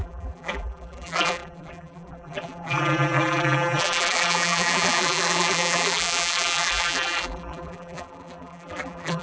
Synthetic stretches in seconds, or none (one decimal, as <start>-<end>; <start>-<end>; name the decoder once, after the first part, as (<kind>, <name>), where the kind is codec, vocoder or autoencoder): 0.0-9.2 (vocoder, BigVGAN v2)